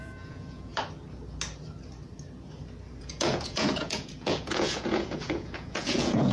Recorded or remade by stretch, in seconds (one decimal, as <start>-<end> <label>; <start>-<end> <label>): 0.0-0.7 remade; 0.7-3.0 recorded; 3.0-6.3 remade